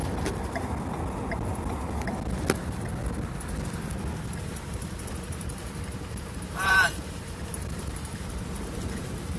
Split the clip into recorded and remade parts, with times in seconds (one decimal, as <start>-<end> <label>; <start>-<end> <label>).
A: 0.0-4.4 recorded; 4.4-9.4 remade